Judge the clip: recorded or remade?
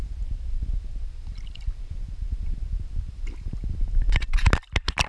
recorded